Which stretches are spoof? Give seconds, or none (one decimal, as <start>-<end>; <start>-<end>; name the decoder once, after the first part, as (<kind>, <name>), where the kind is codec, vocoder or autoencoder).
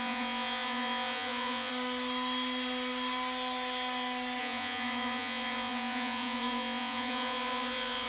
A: 0.0-1.7 (vocoder, Vocos); 4.4-8.1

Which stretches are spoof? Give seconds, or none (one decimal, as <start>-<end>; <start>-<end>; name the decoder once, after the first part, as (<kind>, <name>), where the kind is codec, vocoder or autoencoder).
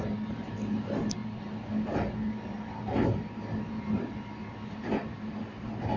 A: none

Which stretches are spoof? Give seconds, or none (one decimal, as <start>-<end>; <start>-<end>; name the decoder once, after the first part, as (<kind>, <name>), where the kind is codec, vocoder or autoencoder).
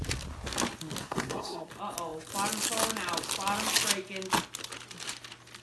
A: 1.0-1.7 (codec, SNAC)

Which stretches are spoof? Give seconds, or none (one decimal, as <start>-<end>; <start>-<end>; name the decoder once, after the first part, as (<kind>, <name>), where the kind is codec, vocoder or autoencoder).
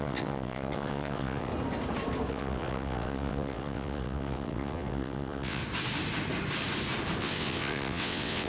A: 0.0-1.5 (vocoder, WaveNeXt); 2.3-5.6; 7.2-8.5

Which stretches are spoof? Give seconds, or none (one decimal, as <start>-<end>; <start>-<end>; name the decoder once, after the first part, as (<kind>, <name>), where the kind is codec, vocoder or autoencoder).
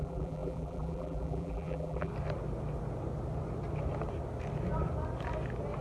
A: 0.0-2.1 (vocoder, BigVGAN v2)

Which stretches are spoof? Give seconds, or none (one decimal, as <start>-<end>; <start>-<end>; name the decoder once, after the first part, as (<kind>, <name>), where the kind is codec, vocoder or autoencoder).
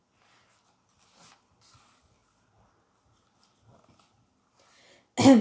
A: none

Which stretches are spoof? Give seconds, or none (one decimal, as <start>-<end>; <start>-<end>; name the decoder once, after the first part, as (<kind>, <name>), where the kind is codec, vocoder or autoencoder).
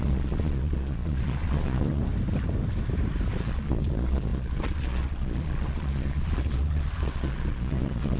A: 0.0-2.0 (vocoder, Vocos); 3.4-8.2